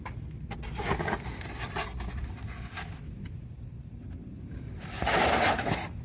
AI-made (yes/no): no